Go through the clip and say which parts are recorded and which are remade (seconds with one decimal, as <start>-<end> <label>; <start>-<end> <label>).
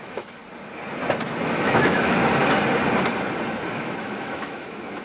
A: 0.0-0.4 remade; 0.4-1.4 recorded; 1.4-2.2 remade; 2.2-3.7 recorded; 3.7-5.0 remade